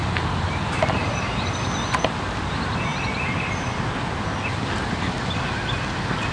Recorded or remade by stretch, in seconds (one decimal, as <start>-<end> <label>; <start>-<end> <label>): 0.0-1.5 remade; 1.5-6.3 recorded